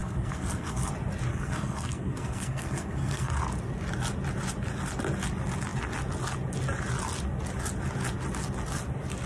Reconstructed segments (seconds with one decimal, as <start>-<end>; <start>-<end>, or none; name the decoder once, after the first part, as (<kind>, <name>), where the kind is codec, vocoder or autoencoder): 0.0-0.9 (codec, SNAC); 1.3-3.3